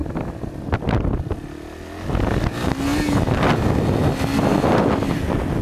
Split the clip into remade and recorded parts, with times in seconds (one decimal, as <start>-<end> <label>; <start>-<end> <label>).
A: 0.0-5.6 recorded